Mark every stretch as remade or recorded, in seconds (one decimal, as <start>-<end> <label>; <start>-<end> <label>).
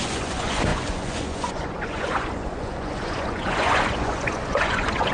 0.0-5.1 remade